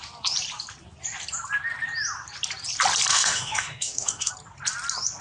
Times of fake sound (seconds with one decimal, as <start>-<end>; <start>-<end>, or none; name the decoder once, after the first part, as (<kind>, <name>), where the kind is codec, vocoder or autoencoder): 3.1-4.3 (autoencoder, DAC-VAE)